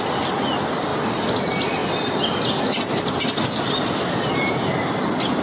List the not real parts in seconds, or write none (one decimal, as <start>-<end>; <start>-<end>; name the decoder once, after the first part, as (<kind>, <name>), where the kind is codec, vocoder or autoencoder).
none